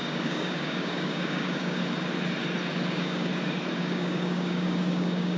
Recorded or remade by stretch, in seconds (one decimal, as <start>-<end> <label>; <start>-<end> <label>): 0.0-1.8 remade; 1.8-2.9 recorded; 2.9-3.3 remade; 3.3-3.8 recorded; 3.8-5.4 remade